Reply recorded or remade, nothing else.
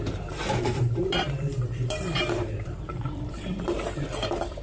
remade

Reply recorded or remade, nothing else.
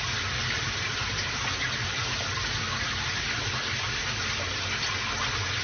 recorded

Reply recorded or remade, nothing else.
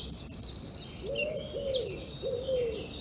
recorded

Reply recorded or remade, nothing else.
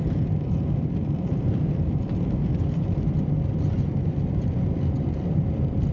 remade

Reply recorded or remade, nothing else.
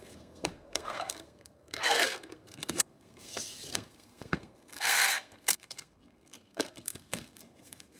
remade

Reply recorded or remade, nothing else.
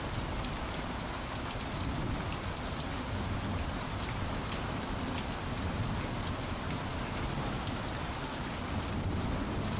recorded